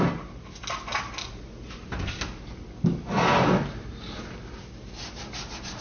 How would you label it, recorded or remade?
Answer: recorded